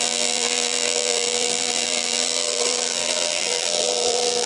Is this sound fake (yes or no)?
yes